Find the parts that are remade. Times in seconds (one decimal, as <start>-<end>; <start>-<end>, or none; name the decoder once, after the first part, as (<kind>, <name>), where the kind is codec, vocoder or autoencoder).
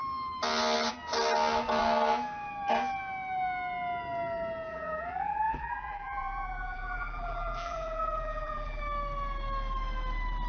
4.7-8.8 (vocoder, BigVGAN v2)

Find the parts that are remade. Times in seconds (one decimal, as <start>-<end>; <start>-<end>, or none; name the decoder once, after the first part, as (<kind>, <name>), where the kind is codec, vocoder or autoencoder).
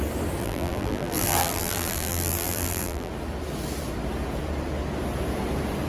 0.4-3.1 (vocoder, BigVGAN v2)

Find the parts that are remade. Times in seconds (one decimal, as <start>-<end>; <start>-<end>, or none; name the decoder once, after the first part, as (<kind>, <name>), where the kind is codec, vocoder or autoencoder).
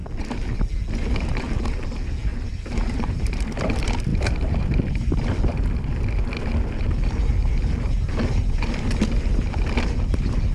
2.3-3.4 (vocoder, BigVGAN v2)